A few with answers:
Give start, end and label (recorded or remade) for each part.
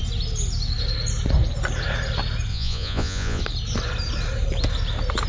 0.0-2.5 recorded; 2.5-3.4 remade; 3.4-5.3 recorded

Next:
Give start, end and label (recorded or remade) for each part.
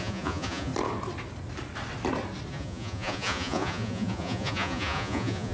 0.0-0.7 remade; 0.7-2.5 recorded; 2.5-5.5 remade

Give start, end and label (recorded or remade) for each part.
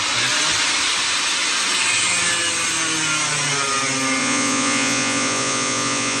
0.0-4.2 recorded; 4.2-6.2 remade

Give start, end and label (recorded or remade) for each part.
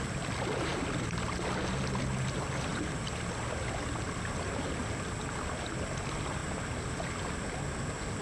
0.0-8.2 recorded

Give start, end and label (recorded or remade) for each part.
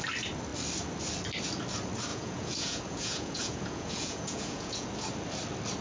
0.0-2.1 recorded; 2.1-4.9 remade; 4.9-5.8 recorded